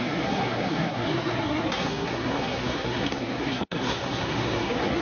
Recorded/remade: remade